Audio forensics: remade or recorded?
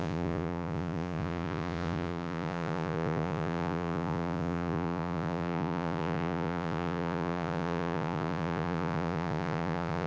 remade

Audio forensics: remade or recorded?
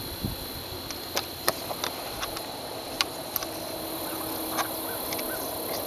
recorded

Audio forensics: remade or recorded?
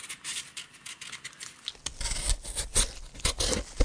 recorded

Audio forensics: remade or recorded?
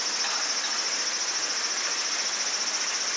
recorded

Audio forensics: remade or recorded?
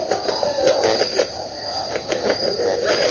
recorded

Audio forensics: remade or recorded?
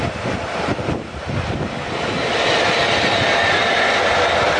recorded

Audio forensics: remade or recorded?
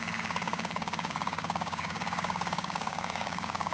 remade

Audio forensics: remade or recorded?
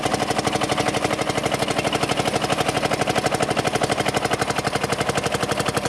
recorded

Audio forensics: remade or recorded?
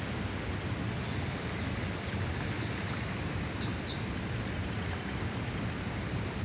recorded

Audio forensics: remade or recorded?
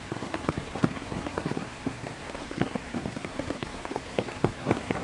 remade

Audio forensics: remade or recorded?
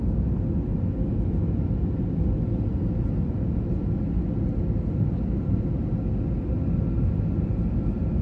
recorded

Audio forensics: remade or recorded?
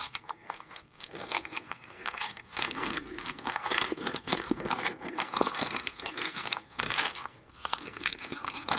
remade